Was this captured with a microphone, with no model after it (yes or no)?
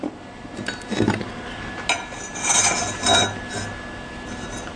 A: yes